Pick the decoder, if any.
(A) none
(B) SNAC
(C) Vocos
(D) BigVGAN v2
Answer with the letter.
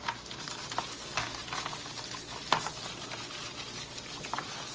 A